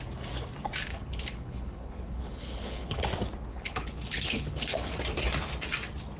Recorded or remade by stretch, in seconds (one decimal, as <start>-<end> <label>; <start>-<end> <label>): 0.0-0.9 recorded; 0.9-3.0 remade; 3.0-3.5 recorded; 3.5-4.9 remade; 4.9-6.2 recorded